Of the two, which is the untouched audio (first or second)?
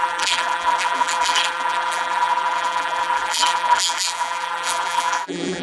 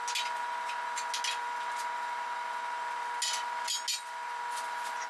second